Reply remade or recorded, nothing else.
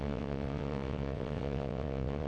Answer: remade